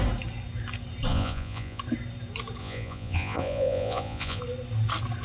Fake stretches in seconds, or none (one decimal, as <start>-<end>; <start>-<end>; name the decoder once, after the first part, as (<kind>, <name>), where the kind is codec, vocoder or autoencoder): 1.1-1.8 (vocoder, Vocos); 2.6-4.4